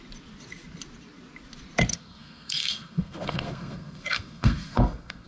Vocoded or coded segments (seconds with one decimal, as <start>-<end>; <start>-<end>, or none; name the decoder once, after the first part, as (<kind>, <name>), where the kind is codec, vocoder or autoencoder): 1.9-5.3 (codec, SNAC)